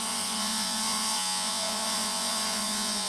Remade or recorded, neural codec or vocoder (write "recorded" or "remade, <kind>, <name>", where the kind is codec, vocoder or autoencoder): remade, vocoder, Vocos